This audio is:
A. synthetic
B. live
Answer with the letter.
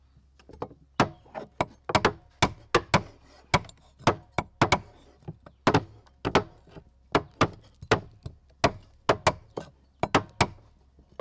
B